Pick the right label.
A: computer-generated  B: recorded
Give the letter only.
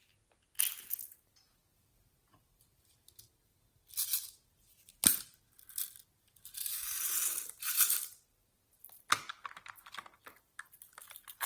B